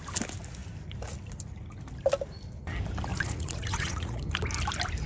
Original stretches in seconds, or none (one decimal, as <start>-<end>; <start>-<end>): 0.0-3.1; 4.2-5.1